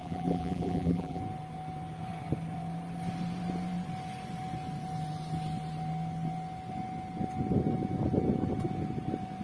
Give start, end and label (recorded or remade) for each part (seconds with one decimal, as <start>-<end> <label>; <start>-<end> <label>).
0.0-1.2 remade; 1.2-9.4 recorded